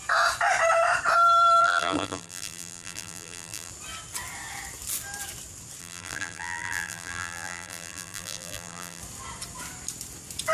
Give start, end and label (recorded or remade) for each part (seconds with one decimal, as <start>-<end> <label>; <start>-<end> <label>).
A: 0.0-1.6 recorded; 1.6-3.7 remade; 3.7-5.8 recorded; 5.8-9.0 remade; 9.0-10.5 recorded